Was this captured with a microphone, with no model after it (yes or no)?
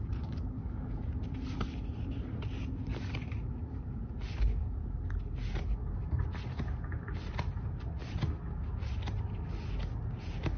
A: yes